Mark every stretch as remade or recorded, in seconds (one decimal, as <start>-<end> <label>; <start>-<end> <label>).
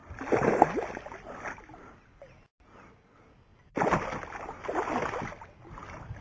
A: 0.0-6.2 recorded